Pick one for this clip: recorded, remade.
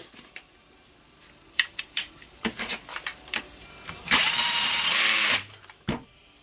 remade